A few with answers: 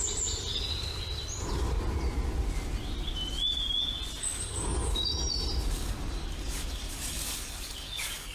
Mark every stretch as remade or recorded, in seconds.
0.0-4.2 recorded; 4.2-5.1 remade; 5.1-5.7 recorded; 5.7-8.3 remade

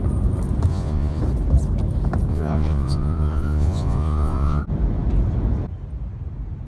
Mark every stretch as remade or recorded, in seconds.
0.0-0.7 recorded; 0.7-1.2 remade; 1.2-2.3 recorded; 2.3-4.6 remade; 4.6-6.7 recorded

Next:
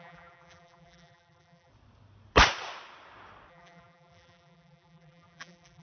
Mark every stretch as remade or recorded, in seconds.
0.0-1.7 remade; 1.7-3.5 recorded; 3.5-5.8 remade

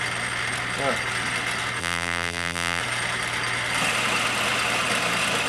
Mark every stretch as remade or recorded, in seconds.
0.0-1.8 recorded; 1.8-2.8 remade; 2.8-5.5 recorded

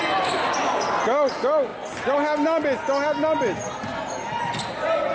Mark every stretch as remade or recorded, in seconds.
0.0-5.1 recorded